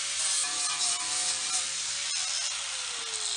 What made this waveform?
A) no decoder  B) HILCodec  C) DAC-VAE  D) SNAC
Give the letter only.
A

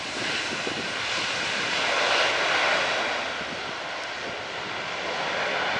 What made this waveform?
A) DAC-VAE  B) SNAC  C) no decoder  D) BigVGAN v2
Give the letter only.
C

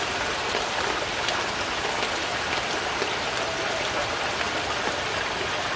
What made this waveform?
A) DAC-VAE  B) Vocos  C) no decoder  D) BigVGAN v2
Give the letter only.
C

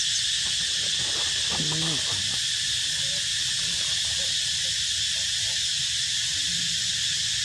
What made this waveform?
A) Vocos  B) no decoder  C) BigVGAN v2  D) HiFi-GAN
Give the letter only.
B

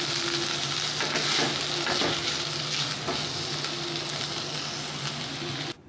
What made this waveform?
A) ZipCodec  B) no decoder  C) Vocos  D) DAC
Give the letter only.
B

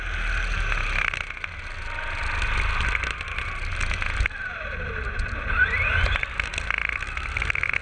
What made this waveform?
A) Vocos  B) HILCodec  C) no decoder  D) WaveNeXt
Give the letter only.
C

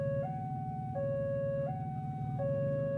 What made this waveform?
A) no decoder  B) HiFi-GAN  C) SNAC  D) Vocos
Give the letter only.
A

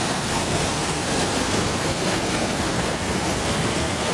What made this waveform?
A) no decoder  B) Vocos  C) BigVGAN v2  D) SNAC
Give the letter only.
D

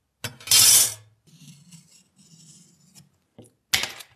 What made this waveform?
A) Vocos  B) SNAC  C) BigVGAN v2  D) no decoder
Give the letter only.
D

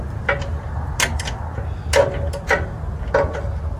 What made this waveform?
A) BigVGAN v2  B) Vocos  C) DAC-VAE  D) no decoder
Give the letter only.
D